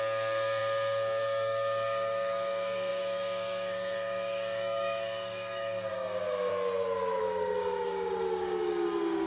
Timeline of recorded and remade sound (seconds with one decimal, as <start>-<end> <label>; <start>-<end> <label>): 0.0-6.5 remade; 6.5-7.2 recorded; 7.2-9.3 remade